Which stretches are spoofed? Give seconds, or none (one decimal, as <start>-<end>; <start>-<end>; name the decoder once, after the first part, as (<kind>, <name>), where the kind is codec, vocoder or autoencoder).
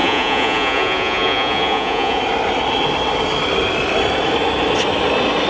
0.0-2.2 (vocoder, Vocos)